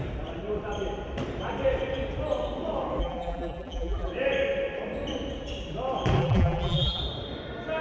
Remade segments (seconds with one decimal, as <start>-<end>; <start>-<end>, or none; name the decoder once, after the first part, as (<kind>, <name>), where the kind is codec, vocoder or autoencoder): 3.0-4.1 (vocoder, BigVGAN v2); 6.2-7.0